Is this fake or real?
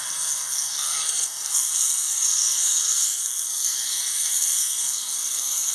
fake